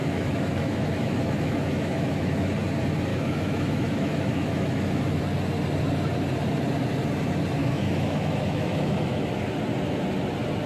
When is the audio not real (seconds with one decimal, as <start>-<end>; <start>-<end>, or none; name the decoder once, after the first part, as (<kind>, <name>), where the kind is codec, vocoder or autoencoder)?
0.0-2.5 (autoencoder, DAC-VAE); 3.1-5.2; 7.6-9.3